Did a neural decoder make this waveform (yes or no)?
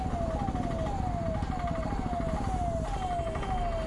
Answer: no